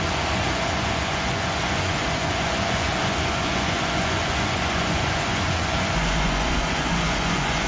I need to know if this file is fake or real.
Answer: fake